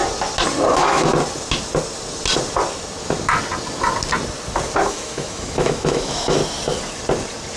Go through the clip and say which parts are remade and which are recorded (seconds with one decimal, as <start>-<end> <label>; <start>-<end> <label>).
0.0-0.7 recorded; 0.7-1.1 remade; 1.1-4.9 recorded; 4.9-6.4 remade; 6.4-7.6 recorded